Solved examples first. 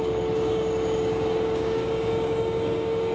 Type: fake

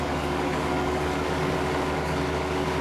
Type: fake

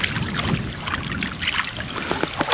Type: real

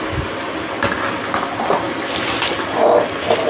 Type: real